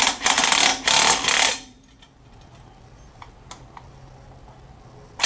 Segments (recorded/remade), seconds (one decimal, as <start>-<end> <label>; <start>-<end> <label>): 0.0-5.3 recorded